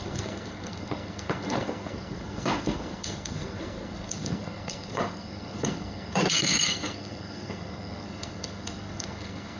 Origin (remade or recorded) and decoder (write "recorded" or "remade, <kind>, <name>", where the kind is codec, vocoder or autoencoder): remade, codec, SNAC